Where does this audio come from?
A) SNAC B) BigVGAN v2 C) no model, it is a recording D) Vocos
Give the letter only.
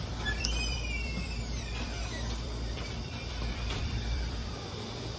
B